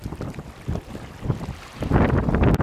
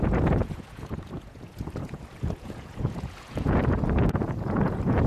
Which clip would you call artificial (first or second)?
second